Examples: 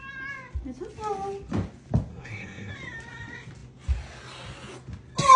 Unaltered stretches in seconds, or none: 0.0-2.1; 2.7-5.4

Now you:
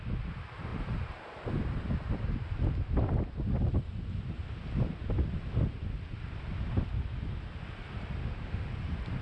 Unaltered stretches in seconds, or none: 0.0-8.2; 8.7-9.2

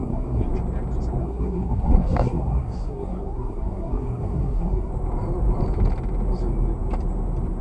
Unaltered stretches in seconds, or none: 0.5-1.2; 4.9-7.6

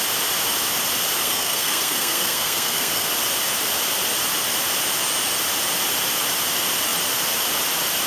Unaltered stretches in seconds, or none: 0.0-1.2; 3.1-8.1